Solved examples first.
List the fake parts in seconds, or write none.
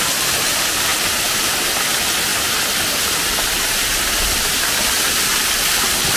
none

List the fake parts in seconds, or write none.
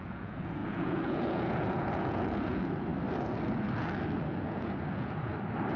0.0-2.9 (vocoder, Vocos); 4.2-5.3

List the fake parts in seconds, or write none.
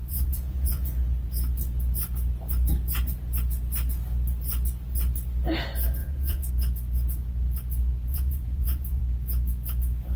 0.0-0.9 (vocoder, Vocos); 6.0-6.5; 8.1-9.0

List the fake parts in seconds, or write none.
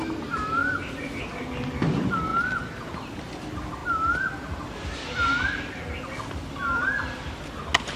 none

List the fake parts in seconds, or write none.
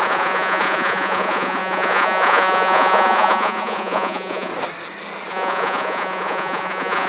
0.0-4.5 (vocoder, Vocos); 5.3-7.1